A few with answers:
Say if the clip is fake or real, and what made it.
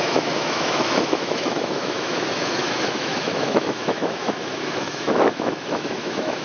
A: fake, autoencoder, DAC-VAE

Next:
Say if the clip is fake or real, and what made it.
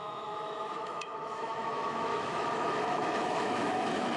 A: fake, autoencoder, DAC-VAE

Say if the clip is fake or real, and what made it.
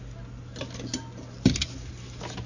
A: real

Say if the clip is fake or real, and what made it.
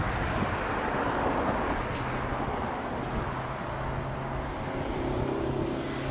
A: real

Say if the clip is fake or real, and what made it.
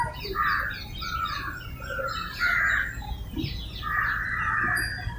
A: real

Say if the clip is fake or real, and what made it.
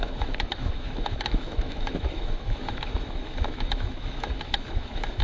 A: fake, autoencoder, DAC-VAE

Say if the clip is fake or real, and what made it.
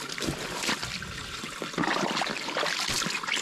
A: real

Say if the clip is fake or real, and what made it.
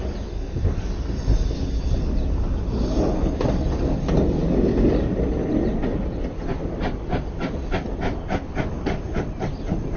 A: real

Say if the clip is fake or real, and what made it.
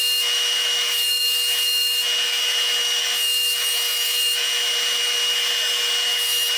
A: fake, autoencoder, DAC-VAE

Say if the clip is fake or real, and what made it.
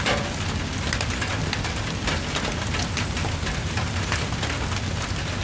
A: real